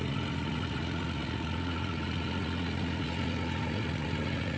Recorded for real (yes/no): no